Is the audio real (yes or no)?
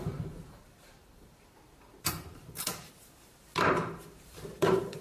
no